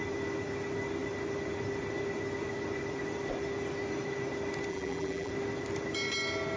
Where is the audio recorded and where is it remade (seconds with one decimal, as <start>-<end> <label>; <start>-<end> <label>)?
0.0-4.7 recorded; 4.7-5.3 remade; 5.3-6.6 recorded